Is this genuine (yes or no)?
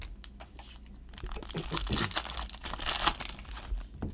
yes